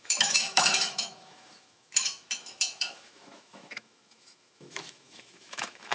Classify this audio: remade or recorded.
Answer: remade